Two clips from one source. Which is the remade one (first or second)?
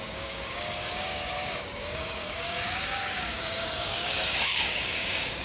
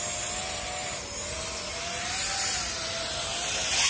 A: first